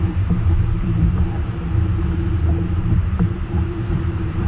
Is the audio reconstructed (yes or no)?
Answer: yes